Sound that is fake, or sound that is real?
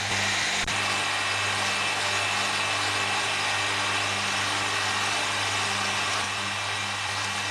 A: real